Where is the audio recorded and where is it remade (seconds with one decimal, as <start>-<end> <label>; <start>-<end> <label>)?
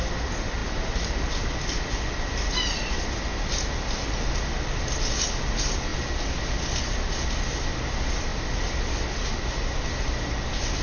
0.0-10.8 recorded